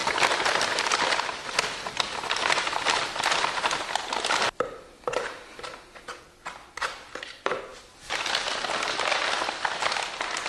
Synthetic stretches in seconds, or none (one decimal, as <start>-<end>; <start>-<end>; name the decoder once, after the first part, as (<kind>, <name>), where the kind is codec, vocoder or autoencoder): 0.0-3.3 (vocoder, BigVGAN v2)